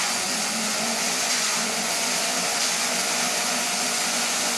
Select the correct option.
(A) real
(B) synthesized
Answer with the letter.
B